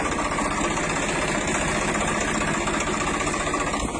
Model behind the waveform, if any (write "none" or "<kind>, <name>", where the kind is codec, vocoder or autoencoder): none